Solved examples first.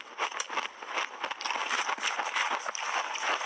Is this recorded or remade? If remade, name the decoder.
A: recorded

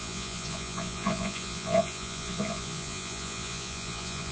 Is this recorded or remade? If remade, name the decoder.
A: remade, vocoder, Vocos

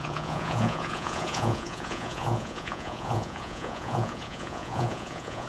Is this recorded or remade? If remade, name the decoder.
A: remade, vocoder, Vocos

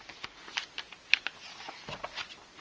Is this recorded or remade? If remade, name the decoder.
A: recorded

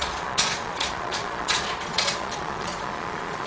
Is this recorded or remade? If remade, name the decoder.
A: remade, vocoder, Vocos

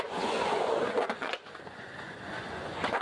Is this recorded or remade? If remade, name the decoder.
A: remade, vocoder, Vocos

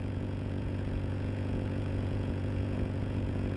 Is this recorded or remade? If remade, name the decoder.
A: remade, vocoder, Vocos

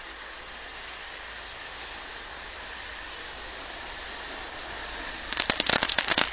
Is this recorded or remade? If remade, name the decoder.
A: recorded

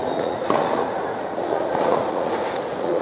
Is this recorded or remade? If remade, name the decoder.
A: remade, vocoder, Vocos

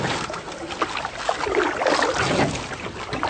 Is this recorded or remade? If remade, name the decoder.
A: recorded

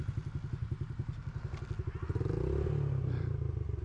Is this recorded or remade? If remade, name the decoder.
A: recorded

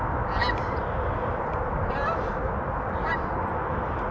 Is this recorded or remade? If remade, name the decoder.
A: recorded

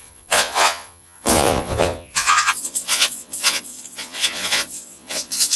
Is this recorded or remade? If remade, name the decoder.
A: remade, vocoder, Vocos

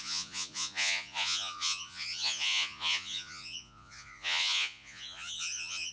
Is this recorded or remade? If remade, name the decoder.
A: remade, vocoder, Vocos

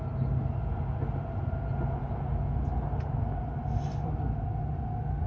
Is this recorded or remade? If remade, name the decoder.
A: recorded